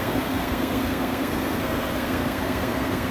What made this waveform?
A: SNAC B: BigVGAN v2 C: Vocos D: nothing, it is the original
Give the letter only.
A